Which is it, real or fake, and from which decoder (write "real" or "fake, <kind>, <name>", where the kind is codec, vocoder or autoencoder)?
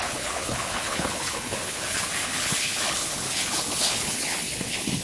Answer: fake, codec, HILCodec